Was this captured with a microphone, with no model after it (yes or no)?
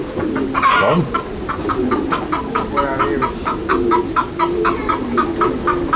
yes